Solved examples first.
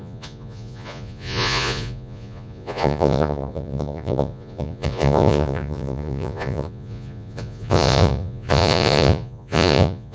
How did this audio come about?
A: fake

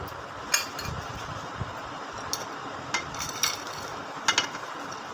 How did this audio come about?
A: real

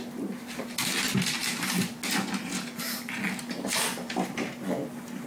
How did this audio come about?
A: real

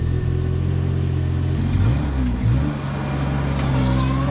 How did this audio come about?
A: real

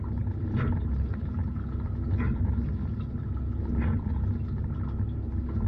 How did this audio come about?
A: real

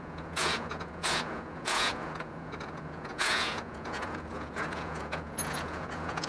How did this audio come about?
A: fake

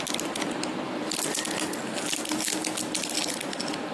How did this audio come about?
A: real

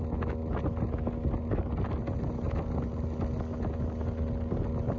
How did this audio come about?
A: real